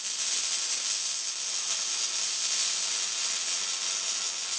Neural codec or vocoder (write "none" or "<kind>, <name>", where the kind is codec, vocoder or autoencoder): none